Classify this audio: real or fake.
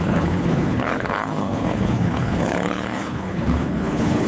fake